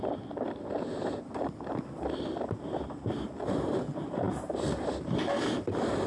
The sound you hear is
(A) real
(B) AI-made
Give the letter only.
A